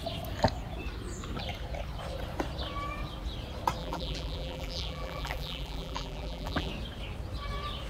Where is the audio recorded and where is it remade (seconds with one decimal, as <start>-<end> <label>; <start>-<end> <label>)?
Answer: 0.0-3.8 recorded; 3.8-6.7 remade; 6.7-7.9 recorded